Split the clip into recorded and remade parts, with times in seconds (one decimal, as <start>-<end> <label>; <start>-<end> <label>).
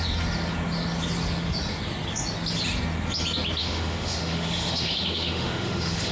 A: 0.0-3.6 recorded; 3.6-6.1 remade